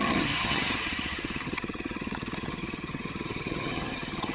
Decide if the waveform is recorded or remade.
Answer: remade